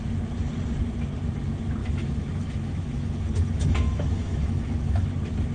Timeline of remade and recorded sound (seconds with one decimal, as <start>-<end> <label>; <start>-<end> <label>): 0.0-1.8 recorded; 1.8-5.1 remade; 5.1-5.5 recorded